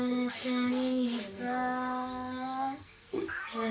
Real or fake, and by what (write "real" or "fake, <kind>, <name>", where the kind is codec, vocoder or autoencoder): fake, codec, SNAC